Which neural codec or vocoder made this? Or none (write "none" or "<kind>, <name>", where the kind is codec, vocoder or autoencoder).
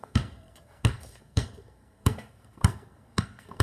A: codec, SNAC